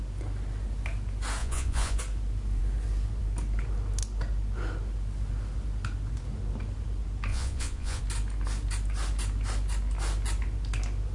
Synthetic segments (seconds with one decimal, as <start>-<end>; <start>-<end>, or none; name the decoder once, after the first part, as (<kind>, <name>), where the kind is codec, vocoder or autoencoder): 1.4-2.0 (vocoder, Vocos); 7.3-8.0